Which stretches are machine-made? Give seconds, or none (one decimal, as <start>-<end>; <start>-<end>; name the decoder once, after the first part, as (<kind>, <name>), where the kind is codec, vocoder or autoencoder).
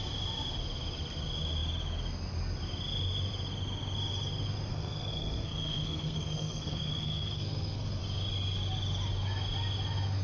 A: 4.7-8.0 (codec, SNAC)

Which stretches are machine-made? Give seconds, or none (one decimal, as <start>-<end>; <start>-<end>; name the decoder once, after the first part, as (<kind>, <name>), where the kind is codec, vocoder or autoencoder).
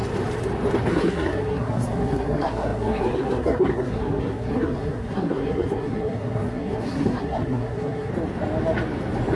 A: 0.9-8.1 (codec, SNAC)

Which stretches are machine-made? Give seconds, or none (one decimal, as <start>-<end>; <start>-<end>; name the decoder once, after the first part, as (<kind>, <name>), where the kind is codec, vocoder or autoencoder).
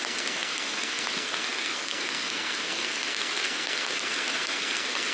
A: 0.0-5.1 (codec, SNAC)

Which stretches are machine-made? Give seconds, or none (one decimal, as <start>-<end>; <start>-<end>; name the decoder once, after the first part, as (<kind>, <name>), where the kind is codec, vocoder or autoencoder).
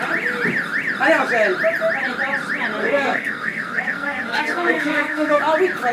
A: 2.8-5.4 (codec, SNAC)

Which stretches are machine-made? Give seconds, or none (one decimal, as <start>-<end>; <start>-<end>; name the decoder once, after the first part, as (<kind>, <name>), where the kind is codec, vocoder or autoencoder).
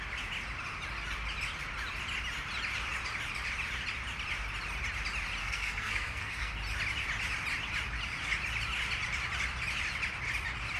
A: 5.4-6.5 (codec, SNAC)